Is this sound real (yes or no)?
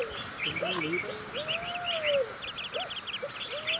yes